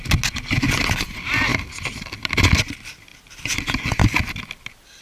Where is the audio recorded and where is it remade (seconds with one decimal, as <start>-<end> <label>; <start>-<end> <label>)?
0.0-5.0 recorded